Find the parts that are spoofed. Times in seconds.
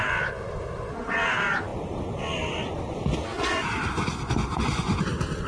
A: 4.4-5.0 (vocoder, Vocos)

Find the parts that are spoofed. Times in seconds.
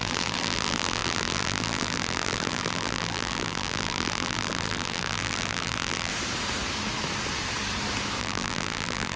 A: 0.0-6.1 (vocoder, BigVGAN v2); 8.2-9.2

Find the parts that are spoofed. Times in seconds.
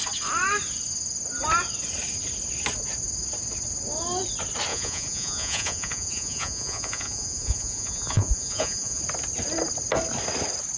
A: 4.7-9.0 (vocoder, Vocos)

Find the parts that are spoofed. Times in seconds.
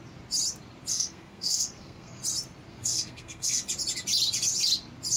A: 0.9-2.2 (codec, SNAC); 2.7-3.6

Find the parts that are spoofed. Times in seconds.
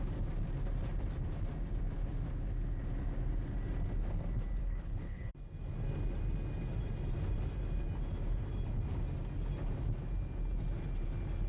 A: 4.6-5.3 (codec, HILCodec)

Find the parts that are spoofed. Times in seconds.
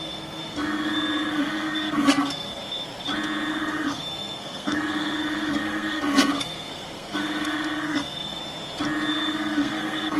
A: 0.0-2.6 (codec, SNAC); 3.5-8.4; 9.1-10.2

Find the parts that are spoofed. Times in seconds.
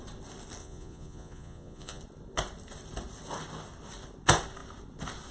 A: 0.6-2.0 (vocoder, Vocos)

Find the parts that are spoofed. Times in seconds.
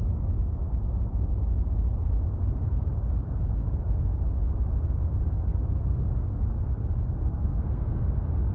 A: 3.5-4.0 (codec, SNAC); 5.5-6.4; 7.2-8.0